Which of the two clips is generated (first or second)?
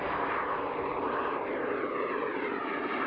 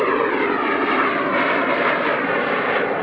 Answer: first